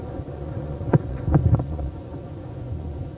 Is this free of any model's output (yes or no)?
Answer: no